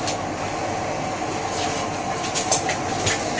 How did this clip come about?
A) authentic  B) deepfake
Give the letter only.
A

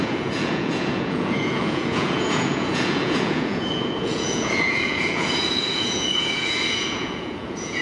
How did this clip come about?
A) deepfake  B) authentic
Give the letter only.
A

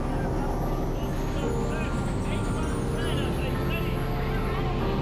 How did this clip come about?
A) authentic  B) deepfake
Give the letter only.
A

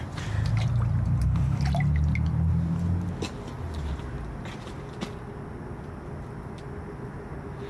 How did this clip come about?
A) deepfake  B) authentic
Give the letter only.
B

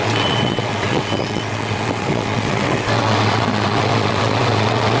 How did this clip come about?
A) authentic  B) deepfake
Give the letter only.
B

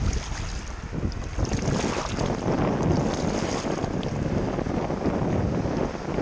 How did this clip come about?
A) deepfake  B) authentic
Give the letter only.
B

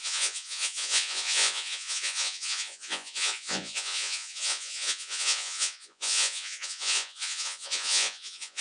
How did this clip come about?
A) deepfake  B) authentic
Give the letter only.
A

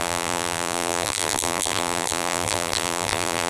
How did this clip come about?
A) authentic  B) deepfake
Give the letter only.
B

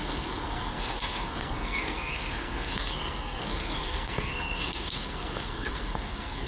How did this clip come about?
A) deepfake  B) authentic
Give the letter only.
A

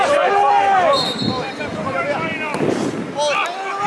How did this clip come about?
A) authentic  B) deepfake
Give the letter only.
A